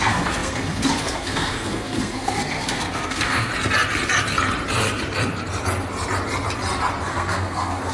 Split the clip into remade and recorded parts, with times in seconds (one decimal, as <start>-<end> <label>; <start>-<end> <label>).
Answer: 0.0-3.5 remade; 3.5-7.1 recorded; 7.1-7.9 remade